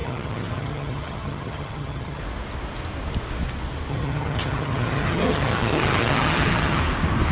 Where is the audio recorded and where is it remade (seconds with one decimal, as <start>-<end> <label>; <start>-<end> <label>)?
0.0-2.2 remade; 2.2-3.9 recorded; 3.9-6.8 remade; 6.8-7.3 recorded